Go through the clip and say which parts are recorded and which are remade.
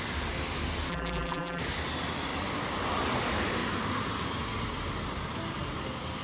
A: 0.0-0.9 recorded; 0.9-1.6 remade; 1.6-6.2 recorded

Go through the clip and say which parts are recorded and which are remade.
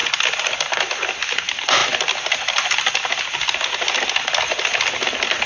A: 0.0-5.5 recorded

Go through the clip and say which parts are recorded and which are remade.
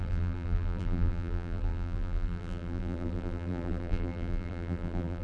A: 0.0-5.2 remade